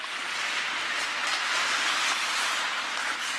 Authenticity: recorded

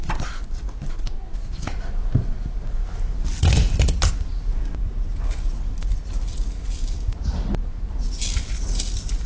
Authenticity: recorded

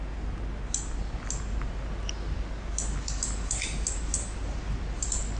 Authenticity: recorded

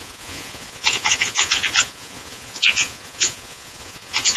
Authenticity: remade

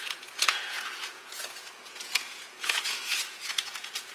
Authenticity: remade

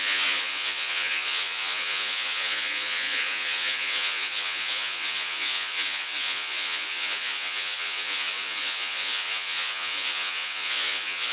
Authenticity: remade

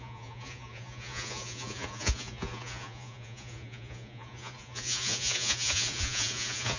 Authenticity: remade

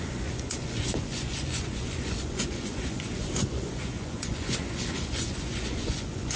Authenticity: remade